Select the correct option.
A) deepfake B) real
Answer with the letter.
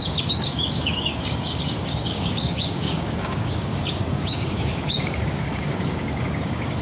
A